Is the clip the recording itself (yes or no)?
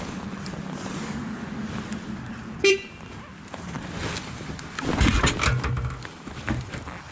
yes